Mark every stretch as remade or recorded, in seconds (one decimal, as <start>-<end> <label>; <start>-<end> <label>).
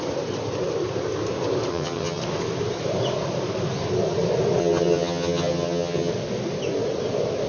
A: 0.0-1.7 recorded; 1.7-2.2 remade; 2.2-4.6 recorded; 4.6-6.1 remade; 6.1-7.5 recorded